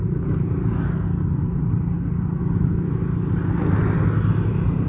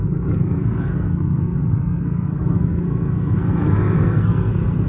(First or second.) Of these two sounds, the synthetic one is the second